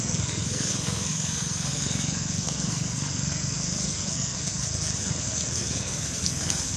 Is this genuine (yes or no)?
no